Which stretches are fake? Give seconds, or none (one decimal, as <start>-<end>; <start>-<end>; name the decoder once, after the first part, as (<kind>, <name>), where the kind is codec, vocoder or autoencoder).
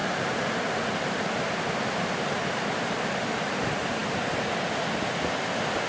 0.0-3.5 (vocoder, BigVGAN v2)